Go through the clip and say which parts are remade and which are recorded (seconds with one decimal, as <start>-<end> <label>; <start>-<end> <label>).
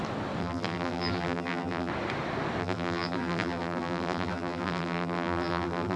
0.0-0.4 recorded; 0.4-1.9 remade; 1.9-2.6 recorded; 2.6-6.0 remade